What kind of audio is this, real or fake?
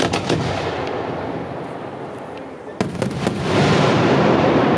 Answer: real